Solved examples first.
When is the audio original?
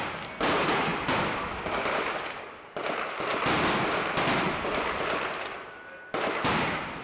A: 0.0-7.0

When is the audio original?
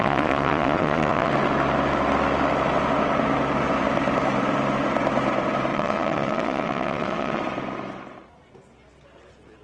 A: 1.3-5.7; 7.4-9.6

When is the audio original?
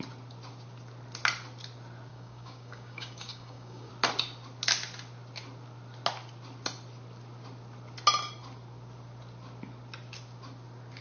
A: 0.0-2.1; 3.9-11.0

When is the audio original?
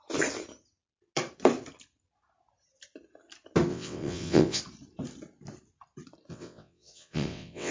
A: 0.0-3.7; 4.6-6.3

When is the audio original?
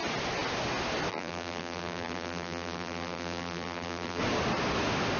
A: 0.0-1.1; 4.2-5.2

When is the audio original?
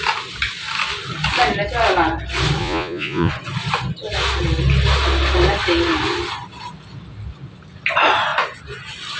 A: 0.0-2.6; 3.3-9.2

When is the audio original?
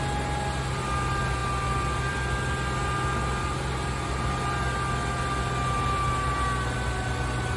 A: 0.0-7.6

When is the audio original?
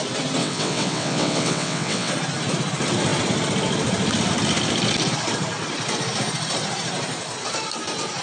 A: 0.0-0.4; 2.1-8.2